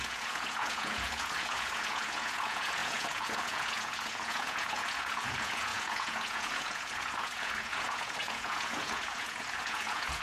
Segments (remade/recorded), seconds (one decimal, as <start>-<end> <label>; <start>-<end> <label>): 0.0-10.2 remade